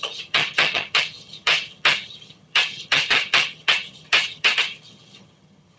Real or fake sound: fake